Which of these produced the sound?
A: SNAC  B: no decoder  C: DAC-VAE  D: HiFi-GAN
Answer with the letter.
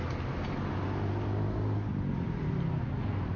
B